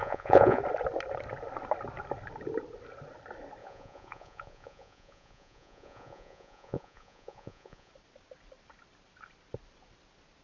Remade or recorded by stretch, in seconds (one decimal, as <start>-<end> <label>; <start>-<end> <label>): 0.0-0.6 remade; 0.6-3.6 recorded; 3.6-7.9 remade; 7.9-10.4 recorded